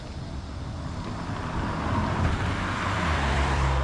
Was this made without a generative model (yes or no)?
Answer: no